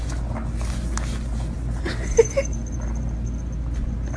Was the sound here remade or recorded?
recorded